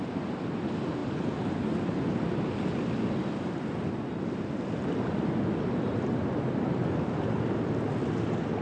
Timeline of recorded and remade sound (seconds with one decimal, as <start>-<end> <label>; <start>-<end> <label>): 0.0-8.6 recorded